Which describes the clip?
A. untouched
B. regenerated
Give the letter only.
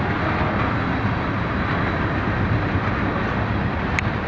A